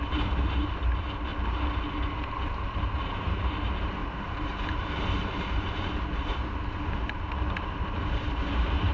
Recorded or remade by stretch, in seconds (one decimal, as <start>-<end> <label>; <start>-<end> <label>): 0.0-1.3 remade; 1.3-2.8 recorded; 2.8-8.9 remade